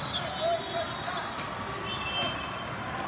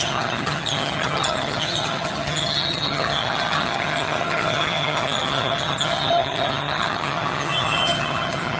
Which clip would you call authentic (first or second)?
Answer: first